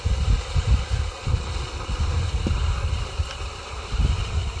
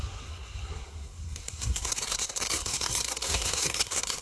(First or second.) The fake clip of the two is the second